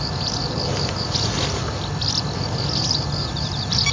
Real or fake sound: fake